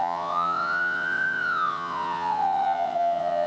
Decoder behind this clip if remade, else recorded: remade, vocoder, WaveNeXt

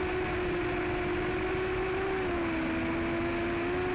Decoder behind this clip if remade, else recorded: recorded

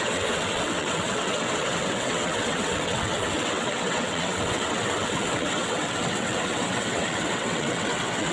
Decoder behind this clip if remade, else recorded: remade, vocoder, WaveNeXt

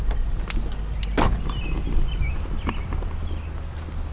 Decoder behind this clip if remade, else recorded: recorded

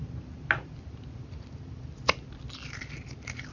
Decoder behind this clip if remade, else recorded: recorded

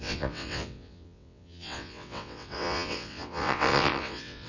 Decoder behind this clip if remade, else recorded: remade, vocoder, WaveNeXt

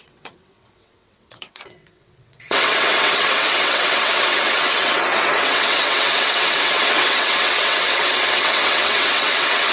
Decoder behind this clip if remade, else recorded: remade, vocoder, WaveNeXt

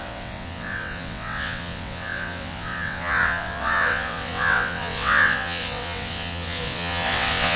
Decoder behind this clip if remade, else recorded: remade, vocoder, WaveNeXt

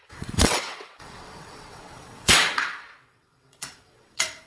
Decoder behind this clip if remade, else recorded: remade, vocoder, WaveNeXt